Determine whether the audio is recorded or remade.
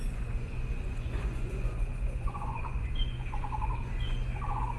remade